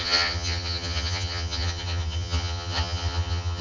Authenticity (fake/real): fake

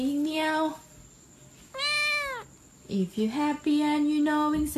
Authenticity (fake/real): real